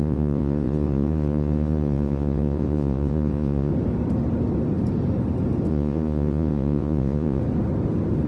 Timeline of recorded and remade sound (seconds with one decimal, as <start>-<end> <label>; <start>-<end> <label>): 0.0-3.7 remade; 3.7-5.7 recorded; 5.7-7.4 remade; 7.4-8.3 recorded